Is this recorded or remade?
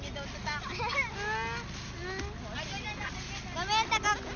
recorded